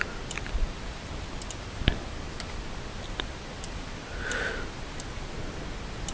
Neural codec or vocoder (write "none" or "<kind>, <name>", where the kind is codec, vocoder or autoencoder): none